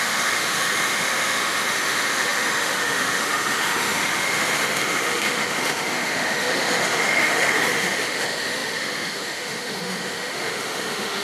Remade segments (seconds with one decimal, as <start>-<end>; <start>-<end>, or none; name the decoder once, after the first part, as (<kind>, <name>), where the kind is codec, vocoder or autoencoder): 0.0-11.2 (autoencoder, DAC-VAE)